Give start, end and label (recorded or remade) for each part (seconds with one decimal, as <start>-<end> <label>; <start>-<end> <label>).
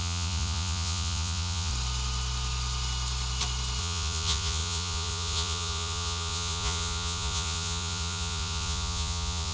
0.0-1.7 remade; 1.7-3.8 recorded; 3.8-9.5 remade